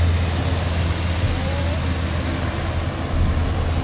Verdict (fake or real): real